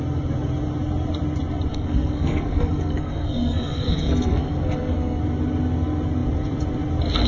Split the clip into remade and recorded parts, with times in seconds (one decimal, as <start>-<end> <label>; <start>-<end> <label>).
0.0-1.7 recorded; 1.7-5.2 remade; 5.2-7.3 recorded